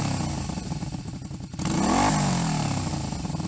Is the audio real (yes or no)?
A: yes